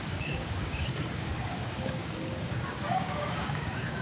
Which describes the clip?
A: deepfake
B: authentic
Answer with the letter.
A